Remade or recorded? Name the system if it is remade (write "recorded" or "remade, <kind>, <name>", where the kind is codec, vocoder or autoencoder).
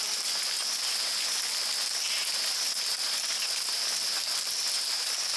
recorded